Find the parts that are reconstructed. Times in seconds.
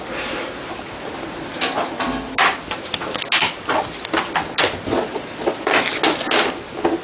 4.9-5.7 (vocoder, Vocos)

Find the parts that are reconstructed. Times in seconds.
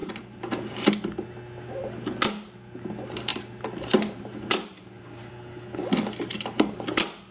0.0-0.9 (vocoder, BigVGAN v2); 3.3-5.3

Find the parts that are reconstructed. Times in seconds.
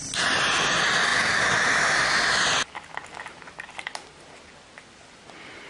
none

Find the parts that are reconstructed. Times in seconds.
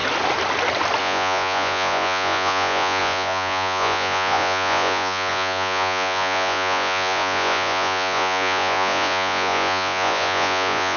1.0-11.0 (vocoder, Vocos)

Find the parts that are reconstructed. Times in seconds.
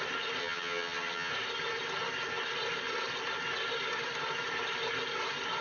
0.4-1.3 (vocoder, HiFi-GAN)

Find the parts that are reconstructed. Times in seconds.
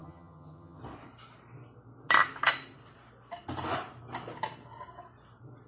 0.0-0.8 (vocoder, HiFi-GAN)